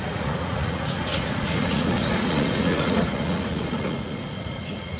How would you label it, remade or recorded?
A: remade